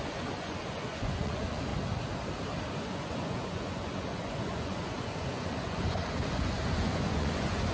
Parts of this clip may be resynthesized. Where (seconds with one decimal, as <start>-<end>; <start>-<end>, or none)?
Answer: 0.0-1.7; 2.7-7.7